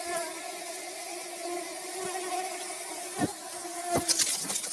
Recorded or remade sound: recorded